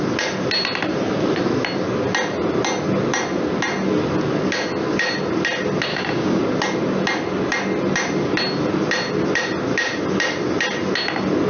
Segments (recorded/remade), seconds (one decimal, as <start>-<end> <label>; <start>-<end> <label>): 0.0-5.9 recorded; 5.9-6.4 remade; 6.4-11.5 recorded